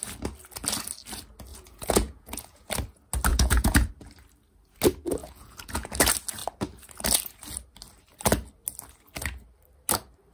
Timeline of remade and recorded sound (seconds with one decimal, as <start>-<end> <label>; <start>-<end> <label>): 0.0-1.5 recorded; 1.5-2.7 remade; 2.7-3.3 recorded; 3.3-3.9 remade; 3.9-5.2 recorded; 5.2-5.9 remade; 5.9-10.3 recorded